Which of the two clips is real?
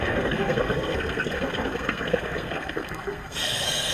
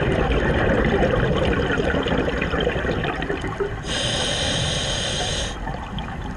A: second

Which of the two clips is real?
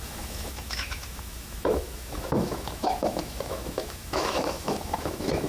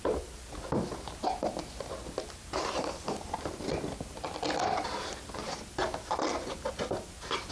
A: second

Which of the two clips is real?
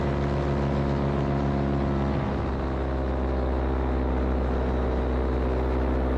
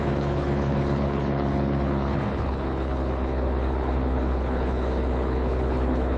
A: first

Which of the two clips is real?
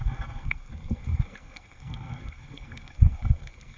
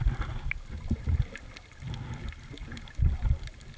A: second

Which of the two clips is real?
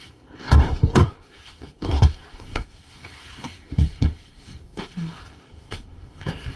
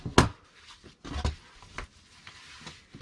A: second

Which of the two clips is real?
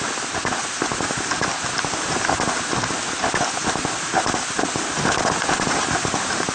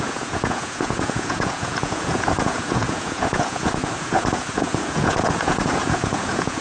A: first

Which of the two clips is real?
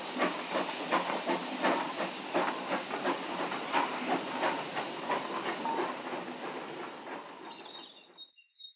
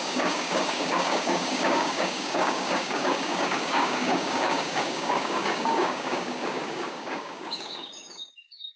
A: first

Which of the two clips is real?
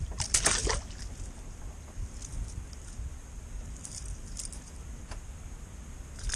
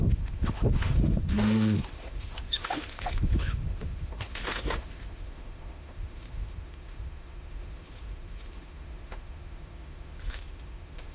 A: first